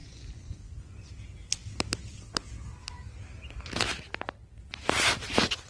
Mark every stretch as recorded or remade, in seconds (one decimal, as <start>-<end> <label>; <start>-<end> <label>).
0.0-1.1 remade; 1.1-5.7 recorded

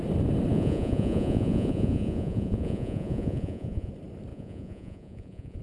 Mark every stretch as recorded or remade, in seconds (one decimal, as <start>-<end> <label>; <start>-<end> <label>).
0.0-0.5 recorded; 0.5-3.9 remade; 3.9-4.3 recorded; 4.3-5.6 remade

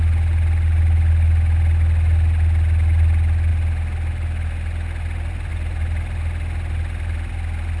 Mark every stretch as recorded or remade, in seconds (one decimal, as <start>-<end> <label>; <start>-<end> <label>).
0.0-7.8 recorded

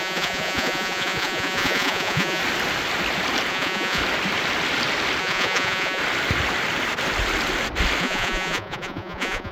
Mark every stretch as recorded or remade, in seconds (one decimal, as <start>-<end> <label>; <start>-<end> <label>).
0.0-2.4 remade; 2.4-3.5 recorded; 3.5-4.0 remade; 4.0-5.2 recorded; 5.2-6.0 remade; 6.0-8.0 recorded; 8.0-9.5 remade